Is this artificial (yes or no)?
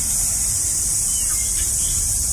no